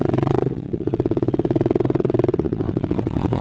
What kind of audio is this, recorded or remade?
remade